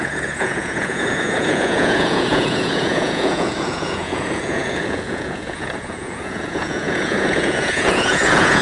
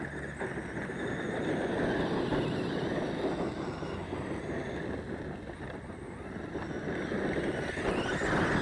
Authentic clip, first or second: second